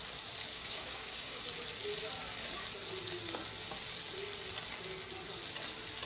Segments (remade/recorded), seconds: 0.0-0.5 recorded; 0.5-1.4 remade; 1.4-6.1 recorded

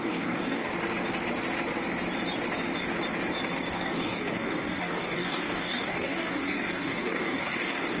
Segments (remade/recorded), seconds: 0.0-0.7 remade; 0.7-3.7 recorded; 3.7-8.0 remade

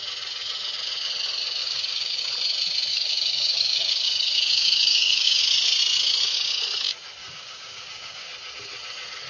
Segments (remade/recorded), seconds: 0.0-1.6 recorded; 1.6-2.2 remade; 2.2-2.9 recorded; 2.9-5.4 remade; 5.4-7.2 recorded; 7.2-8.3 remade; 8.3-9.3 recorded

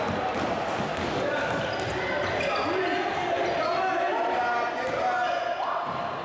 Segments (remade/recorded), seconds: 0.0-0.9 recorded; 0.9-1.6 remade; 1.6-6.2 recorded

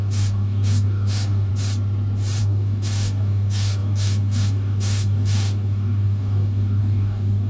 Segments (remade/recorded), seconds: 0.0-1.5 remade; 1.5-2.4 recorded; 2.4-7.5 remade

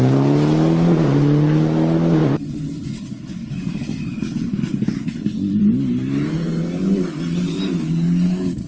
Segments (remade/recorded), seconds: 0.0-8.7 recorded